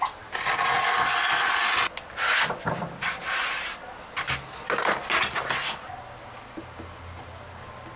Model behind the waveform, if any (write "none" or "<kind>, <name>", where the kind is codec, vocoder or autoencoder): none